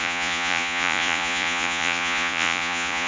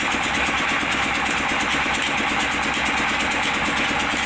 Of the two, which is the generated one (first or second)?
first